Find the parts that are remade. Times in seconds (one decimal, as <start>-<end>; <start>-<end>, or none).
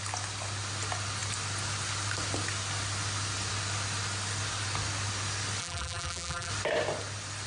5.6-6.5